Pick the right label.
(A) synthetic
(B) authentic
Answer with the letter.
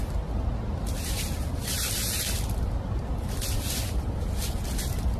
B